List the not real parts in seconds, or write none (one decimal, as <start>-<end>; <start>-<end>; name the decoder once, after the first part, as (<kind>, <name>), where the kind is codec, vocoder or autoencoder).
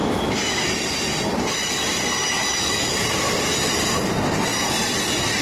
0.0-0.6 (autoencoder, DAC-VAE); 2.4-2.9